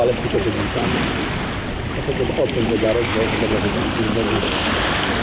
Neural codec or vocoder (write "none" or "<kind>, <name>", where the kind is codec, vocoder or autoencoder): none